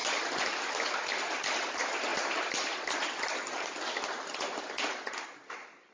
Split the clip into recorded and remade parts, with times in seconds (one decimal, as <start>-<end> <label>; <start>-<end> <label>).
0.0-5.9 recorded